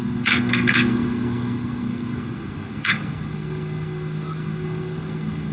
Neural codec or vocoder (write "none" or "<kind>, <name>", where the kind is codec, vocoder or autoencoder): codec, SNAC